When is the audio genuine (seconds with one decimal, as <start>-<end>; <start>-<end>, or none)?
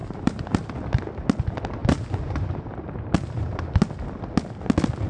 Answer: 0.6-1.8; 3.6-5.1